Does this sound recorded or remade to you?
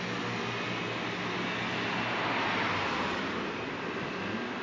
recorded